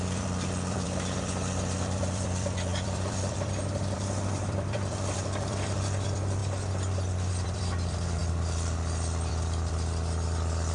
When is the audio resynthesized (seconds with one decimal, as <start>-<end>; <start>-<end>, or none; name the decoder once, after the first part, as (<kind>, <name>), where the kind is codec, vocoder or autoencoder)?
0.0-6.4 (vocoder, BigVGAN v2); 7.3-8.2; 9.3-10.7